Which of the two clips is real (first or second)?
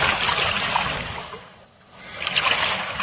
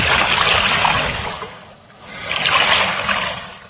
second